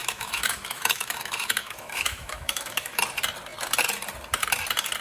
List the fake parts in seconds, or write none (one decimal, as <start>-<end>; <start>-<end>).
0.0-3.0